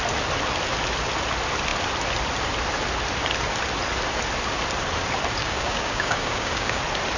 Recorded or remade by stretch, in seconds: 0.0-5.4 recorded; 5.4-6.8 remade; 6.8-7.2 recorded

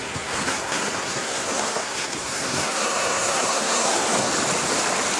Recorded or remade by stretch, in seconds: 0.0-4.3 remade; 4.3-5.2 recorded

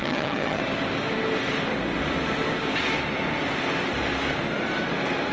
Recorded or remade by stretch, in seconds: 0.0-0.6 remade; 0.6-5.3 recorded